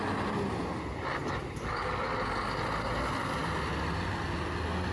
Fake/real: real